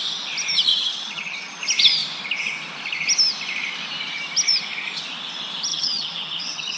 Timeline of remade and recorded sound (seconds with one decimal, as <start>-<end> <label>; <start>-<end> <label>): 0.0-0.7 recorded; 0.7-1.6 remade; 1.6-5.7 recorded; 5.7-6.8 remade